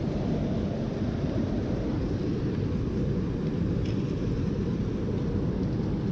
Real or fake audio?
real